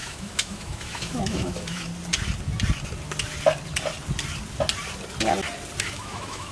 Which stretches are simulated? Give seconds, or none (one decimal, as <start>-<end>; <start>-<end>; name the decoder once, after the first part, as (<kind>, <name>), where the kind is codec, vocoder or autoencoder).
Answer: 0.0-1.9 (autoencoder, DAC-VAE); 5.8-6.5

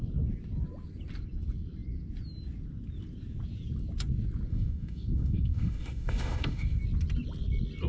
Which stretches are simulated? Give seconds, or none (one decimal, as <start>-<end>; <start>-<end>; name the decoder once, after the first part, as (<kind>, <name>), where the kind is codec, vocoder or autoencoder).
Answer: 4.5-6.8 (autoencoder, DAC-VAE)

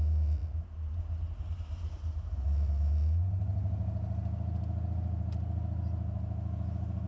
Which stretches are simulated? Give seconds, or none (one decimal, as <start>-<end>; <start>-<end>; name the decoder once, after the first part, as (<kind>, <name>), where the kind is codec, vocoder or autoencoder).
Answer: none